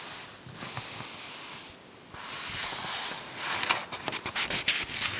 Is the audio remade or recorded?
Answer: recorded